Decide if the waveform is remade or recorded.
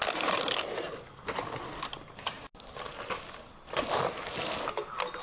recorded